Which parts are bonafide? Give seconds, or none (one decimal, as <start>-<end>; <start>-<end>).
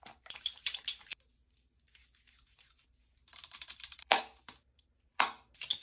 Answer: none